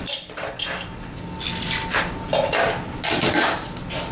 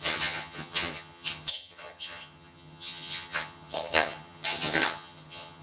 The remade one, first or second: second